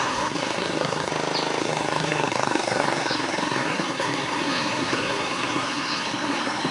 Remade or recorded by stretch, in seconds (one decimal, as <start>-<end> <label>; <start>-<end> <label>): 0.0-1.1 remade; 1.1-1.6 recorded; 1.6-6.7 remade